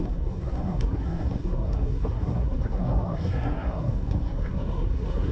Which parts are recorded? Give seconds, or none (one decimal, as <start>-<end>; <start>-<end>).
none